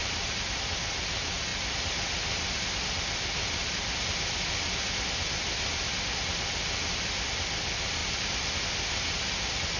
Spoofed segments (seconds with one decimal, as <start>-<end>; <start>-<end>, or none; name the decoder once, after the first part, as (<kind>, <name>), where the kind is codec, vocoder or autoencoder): none

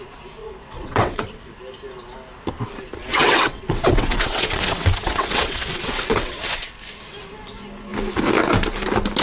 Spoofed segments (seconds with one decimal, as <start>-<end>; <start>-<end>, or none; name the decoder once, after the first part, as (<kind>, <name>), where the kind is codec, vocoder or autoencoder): 0.4-1.6 (vocoder, WaveNeXt); 3.1-6.7

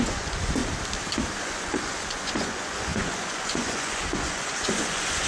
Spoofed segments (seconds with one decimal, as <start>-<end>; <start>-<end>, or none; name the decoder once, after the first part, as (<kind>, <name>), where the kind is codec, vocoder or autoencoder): 0.0-0.6 (vocoder, Vocos); 1.4-5.3

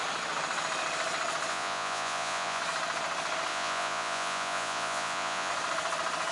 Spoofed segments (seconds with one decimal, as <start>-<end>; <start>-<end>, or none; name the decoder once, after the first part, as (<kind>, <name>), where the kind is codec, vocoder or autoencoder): 1.5-2.6 (vocoder, Vocos); 3.5-5.5